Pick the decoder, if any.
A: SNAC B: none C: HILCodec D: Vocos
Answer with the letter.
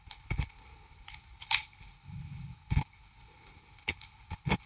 C